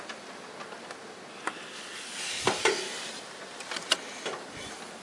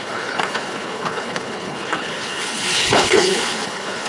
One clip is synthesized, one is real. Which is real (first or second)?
first